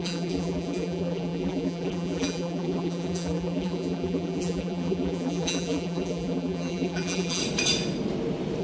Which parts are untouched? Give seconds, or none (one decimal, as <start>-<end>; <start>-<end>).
7.4-8.6